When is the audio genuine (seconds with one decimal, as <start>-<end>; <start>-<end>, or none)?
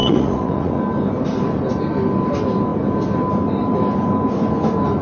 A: 0.8-5.0